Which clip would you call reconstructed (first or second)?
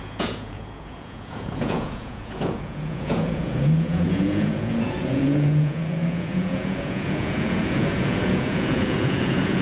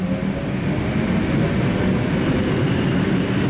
first